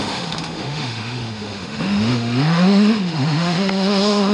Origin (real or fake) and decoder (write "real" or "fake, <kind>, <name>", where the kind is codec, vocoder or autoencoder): fake, autoencoder, DAC-VAE